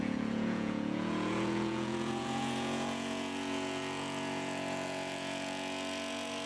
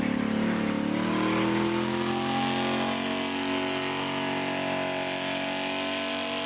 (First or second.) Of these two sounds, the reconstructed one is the first